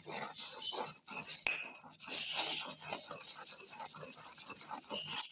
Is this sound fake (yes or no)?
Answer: no